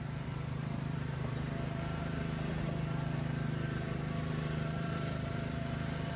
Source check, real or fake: fake